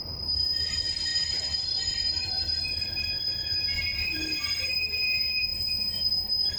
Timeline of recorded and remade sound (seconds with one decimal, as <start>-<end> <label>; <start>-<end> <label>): 0.0-6.6 remade